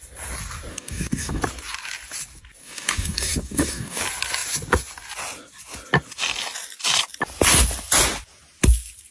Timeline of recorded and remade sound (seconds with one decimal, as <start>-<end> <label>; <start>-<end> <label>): 0.0-0.7 recorded; 0.7-1.4 remade; 1.4-2.6 recorded; 2.6-4.0 remade; 4.0-9.1 recorded